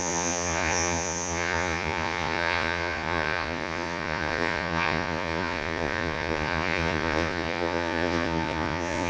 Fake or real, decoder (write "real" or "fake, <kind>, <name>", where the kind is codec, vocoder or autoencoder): fake, vocoder, Vocos